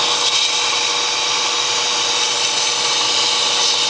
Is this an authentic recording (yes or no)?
yes